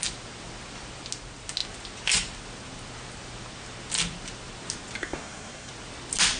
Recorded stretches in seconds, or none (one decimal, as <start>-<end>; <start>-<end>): 0.0-5.0; 5.7-6.4